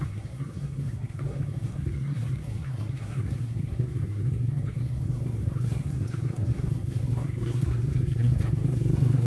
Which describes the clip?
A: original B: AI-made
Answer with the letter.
B